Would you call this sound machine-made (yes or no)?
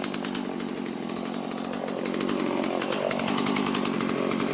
no